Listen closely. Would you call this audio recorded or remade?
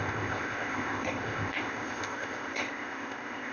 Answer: remade